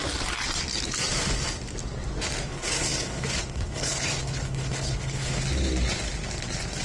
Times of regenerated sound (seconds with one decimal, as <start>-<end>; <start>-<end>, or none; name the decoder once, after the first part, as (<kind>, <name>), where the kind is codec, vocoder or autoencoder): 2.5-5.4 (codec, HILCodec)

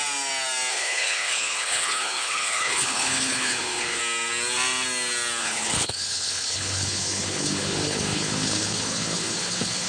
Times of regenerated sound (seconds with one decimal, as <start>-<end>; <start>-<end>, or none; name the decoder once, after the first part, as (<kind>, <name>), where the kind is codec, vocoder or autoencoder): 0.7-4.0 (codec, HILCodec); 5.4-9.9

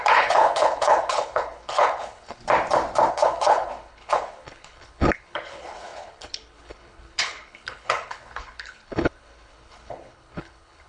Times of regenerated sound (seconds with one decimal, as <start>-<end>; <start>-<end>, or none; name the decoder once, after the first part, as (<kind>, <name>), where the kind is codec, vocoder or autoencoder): 0.0-2.4 (codec, HILCodec); 3.1-10.9